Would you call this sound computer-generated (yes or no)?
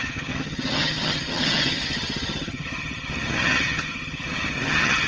yes